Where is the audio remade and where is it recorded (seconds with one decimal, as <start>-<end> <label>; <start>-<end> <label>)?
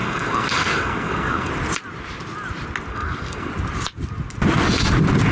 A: 0.0-1.5 remade; 1.5-2.9 recorded; 2.9-3.5 remade; 3.5-5.3 recorded